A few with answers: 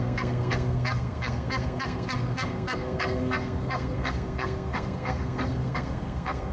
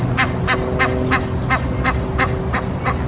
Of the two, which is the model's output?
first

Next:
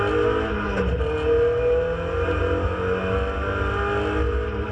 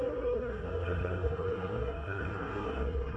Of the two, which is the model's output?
second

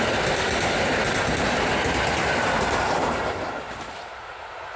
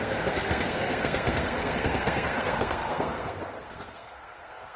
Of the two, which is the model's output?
second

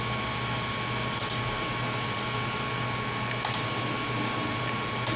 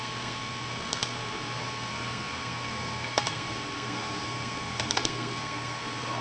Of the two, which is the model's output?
second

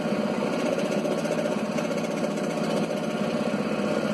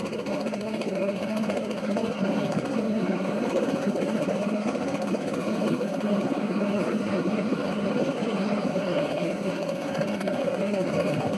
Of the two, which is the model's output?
second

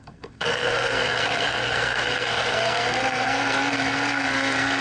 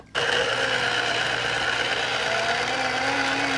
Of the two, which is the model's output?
first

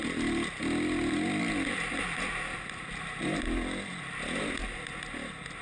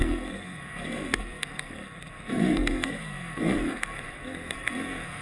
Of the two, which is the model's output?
second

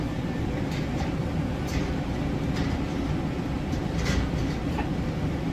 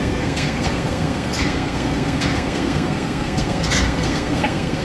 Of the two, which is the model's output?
second